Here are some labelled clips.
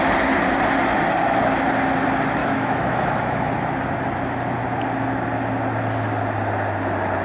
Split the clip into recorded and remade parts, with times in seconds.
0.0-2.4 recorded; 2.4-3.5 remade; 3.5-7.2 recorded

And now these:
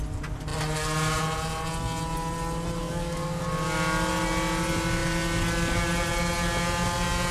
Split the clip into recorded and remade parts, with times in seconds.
0.0-2.8 recorded; 2.8-3.4 remade; 3.4-7.3 recorded

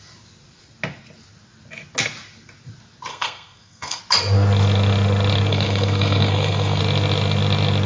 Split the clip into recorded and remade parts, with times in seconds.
0.0-3.1 recorded; 3.1-4.0 remade; 4.0-5.5 recorded; 5.5-6.8 remade; 6.8-7.9 recorded

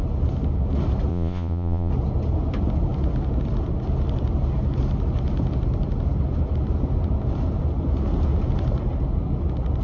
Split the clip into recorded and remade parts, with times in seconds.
0.0-1.1 recorded; 1.1-1.9 remade; 1.9-9.8 recorded

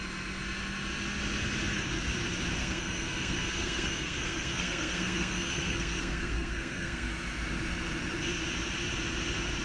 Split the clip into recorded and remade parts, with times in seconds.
0.0-2.6 recorded; 2.6-7.1 remade; 7.1-9.6 recorded

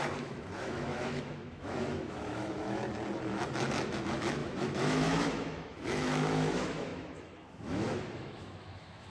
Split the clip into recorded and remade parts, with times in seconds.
0.0-2.8 remade; 2.8-3.3 recorded; 3.3-9.1 remade